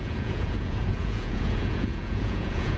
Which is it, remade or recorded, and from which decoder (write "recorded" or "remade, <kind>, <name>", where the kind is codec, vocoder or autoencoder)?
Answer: remade, vocoder, Vocos